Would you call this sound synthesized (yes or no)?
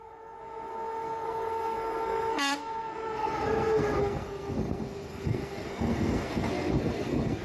yes